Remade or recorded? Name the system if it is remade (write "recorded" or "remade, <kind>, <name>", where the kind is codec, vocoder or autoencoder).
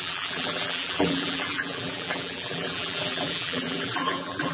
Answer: remade, vocoder, BigVGAN v2